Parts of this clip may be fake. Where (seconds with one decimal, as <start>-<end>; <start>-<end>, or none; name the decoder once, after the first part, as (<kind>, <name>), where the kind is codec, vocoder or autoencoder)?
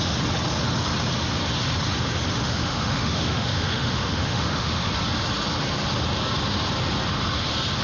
2.4-4.9 (autoencoder, DAC-VAE)